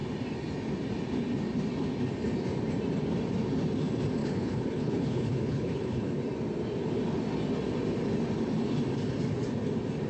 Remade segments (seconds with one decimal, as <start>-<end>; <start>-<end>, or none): 4.2-6.2